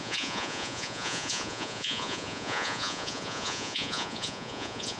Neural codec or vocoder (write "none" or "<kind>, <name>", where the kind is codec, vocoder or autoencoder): vocoder, Vocos